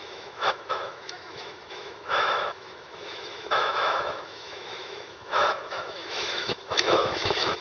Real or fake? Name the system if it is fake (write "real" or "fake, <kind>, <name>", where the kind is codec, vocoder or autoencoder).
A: fake, autoencoder, DAC-VAE